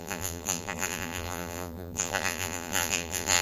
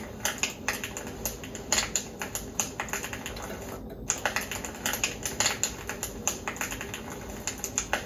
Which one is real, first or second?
second